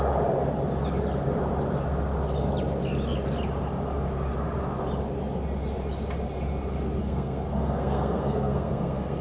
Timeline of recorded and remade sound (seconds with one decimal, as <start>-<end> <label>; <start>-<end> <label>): 0.0-7.0 recorded; 7.0-9.2 remade